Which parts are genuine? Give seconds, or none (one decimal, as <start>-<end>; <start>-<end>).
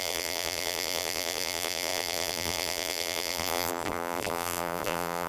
none